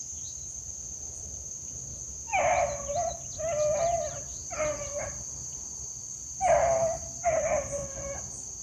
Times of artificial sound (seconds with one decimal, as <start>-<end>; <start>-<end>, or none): 0.0-6.3; 7.2-7.8